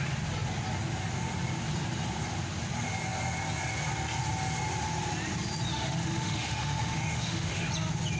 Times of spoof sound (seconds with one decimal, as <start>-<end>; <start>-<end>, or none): 5.7-7.7